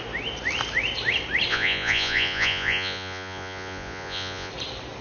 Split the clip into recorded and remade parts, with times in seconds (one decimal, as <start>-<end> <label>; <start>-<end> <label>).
0.0-1.5 recorded; 1.5-4.5 remade; 4.5-5.0 recorded